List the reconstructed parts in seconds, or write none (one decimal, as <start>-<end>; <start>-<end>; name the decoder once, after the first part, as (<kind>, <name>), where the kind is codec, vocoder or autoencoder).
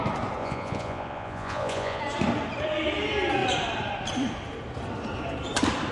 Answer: 0.4-2.0 (vocoder, Vocos)